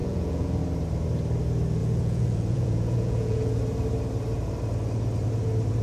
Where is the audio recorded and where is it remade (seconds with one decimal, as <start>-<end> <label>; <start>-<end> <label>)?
0.0-0.6 remade; 0.6-1.8 recorded; 1.8-3.6 remade; 3.6-5.8 recorded